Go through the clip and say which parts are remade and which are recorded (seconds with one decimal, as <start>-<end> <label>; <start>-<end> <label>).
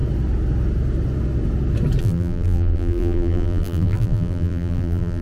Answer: 0.0-2.0 recorded; 2.0-5.2 remade